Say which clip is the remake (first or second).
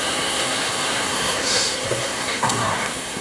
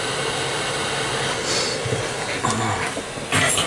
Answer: first